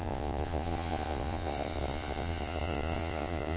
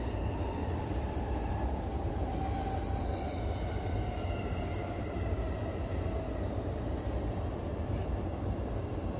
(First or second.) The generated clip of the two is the first